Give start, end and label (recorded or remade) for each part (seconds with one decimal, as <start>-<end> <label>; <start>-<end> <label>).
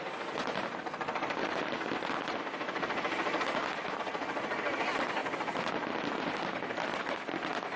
0.0-7.8 recorded